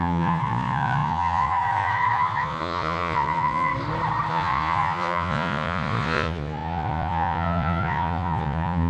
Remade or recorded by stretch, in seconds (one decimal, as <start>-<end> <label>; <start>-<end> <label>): 0.0-3.7 remade; 3.7-4.3 recorded; 4.3-8.9 remade